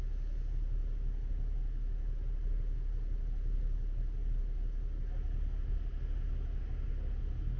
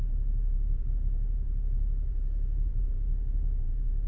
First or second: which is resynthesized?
second